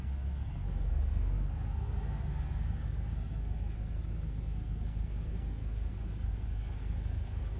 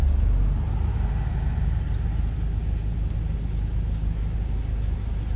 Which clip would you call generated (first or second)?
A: first